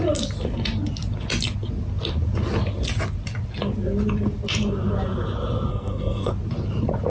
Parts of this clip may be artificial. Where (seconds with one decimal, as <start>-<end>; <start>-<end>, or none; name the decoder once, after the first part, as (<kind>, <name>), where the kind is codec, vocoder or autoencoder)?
5.7-6.3 (codec, SNAC)